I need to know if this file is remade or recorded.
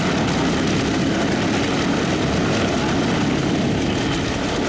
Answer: recorded